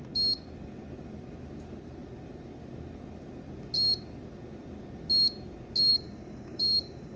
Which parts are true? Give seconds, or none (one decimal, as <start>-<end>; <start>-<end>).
0.0-5.9